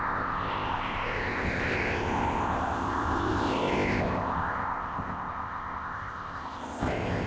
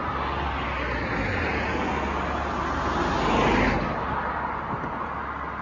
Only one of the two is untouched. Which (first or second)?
second